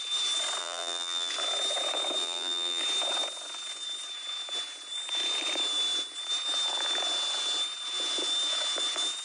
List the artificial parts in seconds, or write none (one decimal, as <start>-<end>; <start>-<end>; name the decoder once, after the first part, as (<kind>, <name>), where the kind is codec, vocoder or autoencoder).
0.6-1.3 (vocoder, BigVGAN v2); 2.2-2.8